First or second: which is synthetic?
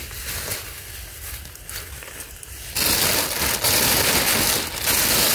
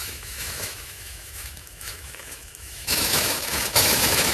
second